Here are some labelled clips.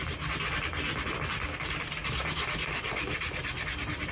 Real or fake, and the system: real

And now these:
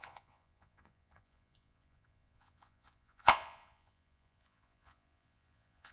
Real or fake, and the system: fake, vocoder, Vocos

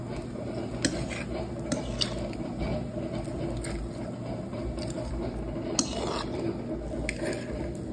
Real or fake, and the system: real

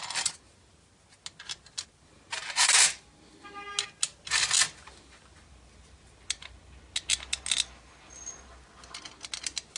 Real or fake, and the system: real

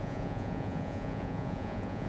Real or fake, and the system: fake, vocoder, Vocos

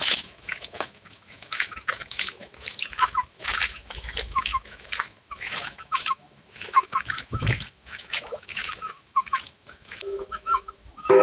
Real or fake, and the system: fake, autoencoder, DAC-VAE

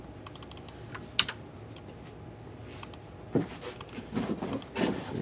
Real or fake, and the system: real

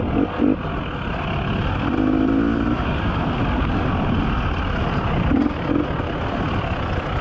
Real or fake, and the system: real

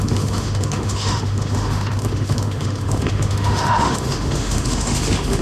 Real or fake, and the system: fake, autoencoder, DAC-VAE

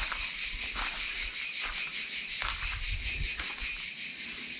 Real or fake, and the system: real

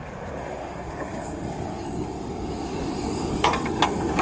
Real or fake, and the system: fake, codec, DAC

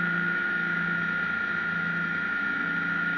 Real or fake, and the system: fake, autoencoder, DAC-VAE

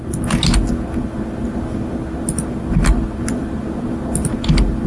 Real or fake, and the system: real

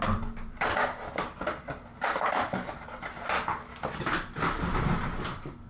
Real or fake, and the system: real